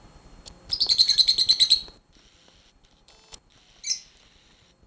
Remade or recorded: recorded